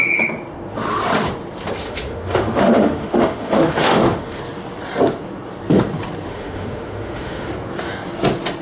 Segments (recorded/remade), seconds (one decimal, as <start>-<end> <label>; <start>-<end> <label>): 0.0-1.8 recorded; 1.8-4.4 remade; 4.4-6.3 recorded; 6.3-7.5 remade; 7.5-8.6 recorded